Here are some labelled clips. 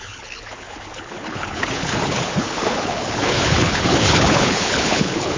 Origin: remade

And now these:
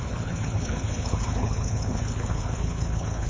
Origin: remade